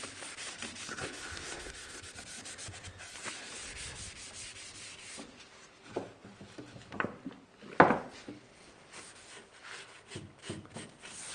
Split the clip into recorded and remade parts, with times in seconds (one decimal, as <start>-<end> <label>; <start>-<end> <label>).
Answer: 0.0-0.9 recorded; 0.9-2.1 remade; 2.1-11.3 recorded